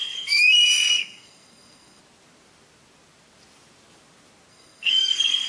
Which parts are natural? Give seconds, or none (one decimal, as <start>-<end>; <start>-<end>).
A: 2.0-4.5